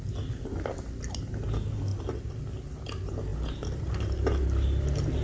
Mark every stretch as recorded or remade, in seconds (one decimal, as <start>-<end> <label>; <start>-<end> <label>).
0.0-5.2 recorded